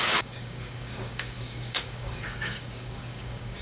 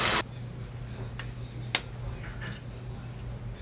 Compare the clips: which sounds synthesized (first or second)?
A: first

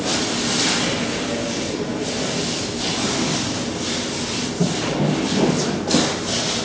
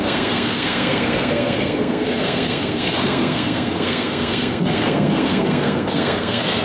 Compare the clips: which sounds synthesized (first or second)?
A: second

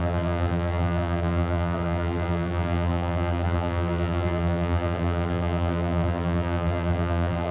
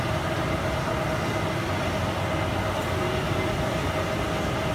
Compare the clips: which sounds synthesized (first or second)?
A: first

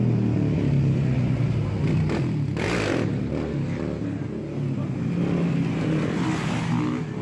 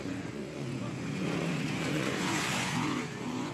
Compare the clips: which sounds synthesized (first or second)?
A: second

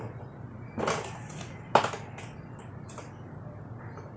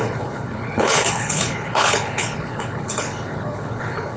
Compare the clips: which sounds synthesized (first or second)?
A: second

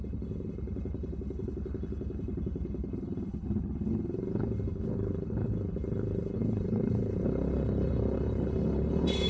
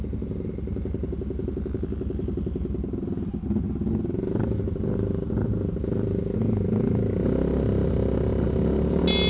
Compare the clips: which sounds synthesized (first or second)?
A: first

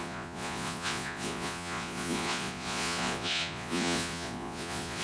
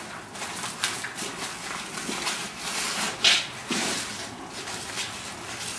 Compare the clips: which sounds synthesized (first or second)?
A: first